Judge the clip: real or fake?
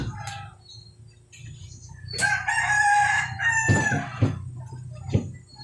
real